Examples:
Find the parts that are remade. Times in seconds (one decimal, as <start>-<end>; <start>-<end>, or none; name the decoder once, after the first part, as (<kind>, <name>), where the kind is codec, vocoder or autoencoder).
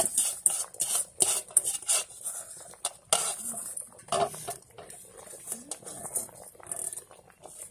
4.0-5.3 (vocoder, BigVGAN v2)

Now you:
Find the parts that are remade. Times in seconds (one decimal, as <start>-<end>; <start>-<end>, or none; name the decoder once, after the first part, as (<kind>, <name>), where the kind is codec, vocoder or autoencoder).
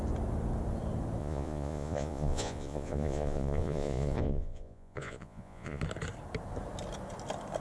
1.2-5.8 (vocoder, Vocos)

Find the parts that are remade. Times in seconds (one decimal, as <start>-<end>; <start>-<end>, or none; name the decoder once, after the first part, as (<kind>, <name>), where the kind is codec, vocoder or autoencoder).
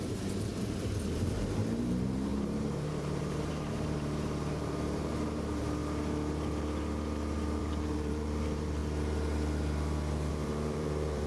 0.0-0.5 (vocoder, BigVGAN v2); 1.1-5.8; 7.6-8.8; 10.3-11.3